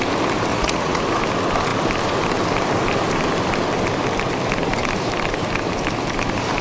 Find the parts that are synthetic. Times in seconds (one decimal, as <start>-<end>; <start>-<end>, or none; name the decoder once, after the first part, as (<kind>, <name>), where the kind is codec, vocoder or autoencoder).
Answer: 0.5-1.0 (vocoder, Vocos)